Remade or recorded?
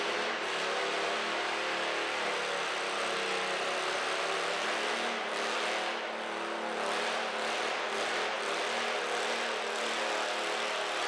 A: recorded